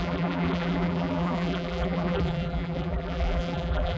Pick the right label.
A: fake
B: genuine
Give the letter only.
A